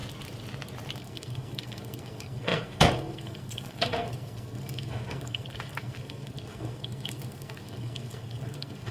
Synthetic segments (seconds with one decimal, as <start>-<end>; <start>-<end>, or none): 1.0-8.9